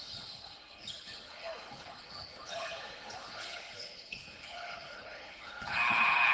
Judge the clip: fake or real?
fake